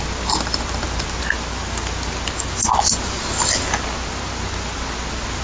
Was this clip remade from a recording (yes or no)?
no